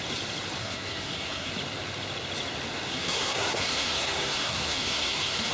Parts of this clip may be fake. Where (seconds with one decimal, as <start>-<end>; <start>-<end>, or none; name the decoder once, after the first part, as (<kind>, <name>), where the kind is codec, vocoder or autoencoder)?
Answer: 0.6-1.5 (codec, SNAC); 2.9-5.5